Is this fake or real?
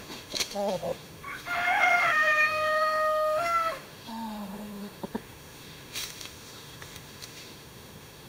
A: fake